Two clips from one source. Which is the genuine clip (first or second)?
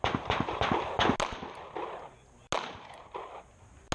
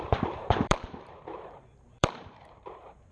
first